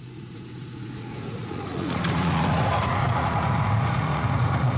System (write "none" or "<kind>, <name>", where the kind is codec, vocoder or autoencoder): vocoder, Vocos